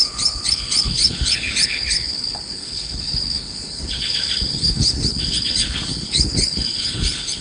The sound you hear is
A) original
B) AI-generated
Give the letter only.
B